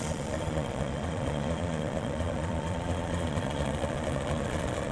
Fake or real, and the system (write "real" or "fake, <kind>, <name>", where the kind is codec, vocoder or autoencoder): fake, vocoder, Vocos